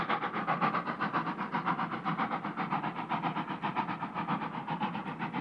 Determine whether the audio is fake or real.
real